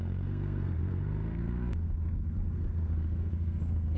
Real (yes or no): no